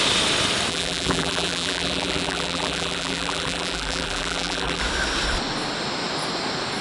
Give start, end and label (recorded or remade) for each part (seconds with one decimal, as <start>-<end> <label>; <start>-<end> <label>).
0.0-0.7 recorded; 0.7-4.8 remade; 4.8-6.8 recorded

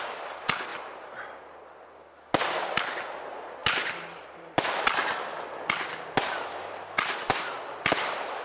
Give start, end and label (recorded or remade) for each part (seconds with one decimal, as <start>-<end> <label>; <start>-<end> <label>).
0.0-3.6 recorded; 3.6-8.4 remade

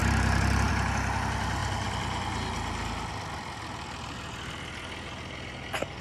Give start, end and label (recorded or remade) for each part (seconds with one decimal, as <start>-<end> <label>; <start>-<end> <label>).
0.0-0.7 remade; 0.7-6.0 recorded

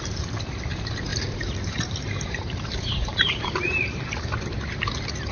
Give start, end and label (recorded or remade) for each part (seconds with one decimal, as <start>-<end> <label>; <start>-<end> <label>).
0.0-1.1 recorded; 1.1-4.3 remade; 4.3-5.3 recorded

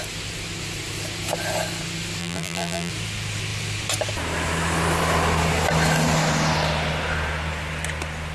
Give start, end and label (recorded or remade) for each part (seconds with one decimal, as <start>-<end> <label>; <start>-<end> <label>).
0.0-2.2 recorded; 2.2-2.9 remade; 2.9-8.3 recorded

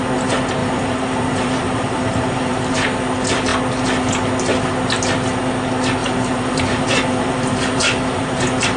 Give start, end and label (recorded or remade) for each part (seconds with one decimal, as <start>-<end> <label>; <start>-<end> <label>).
0.0-0.6 recorded; 0.6-2.7 remade; 2.7-6.0 recorded; 6.0-8.3 remade; 8.3-8.8 recorded